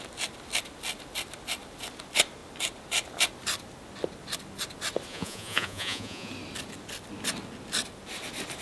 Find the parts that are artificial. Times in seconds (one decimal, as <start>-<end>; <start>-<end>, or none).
5.1-6.3